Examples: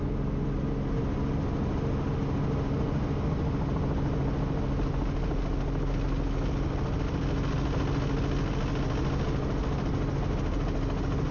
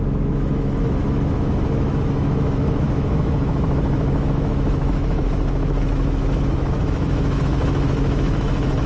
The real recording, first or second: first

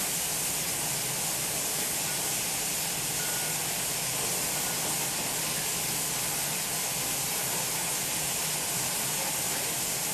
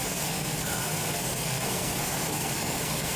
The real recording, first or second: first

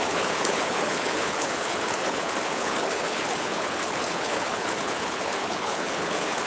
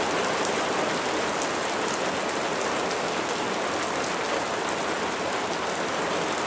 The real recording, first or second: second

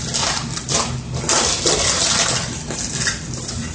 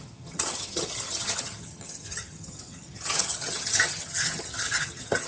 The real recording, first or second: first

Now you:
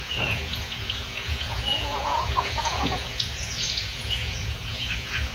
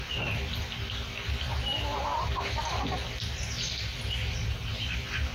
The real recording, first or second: second